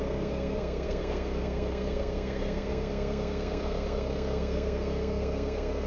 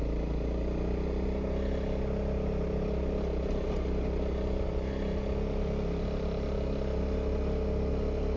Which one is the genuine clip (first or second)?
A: second